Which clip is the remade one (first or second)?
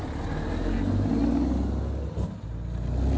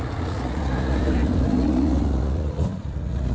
second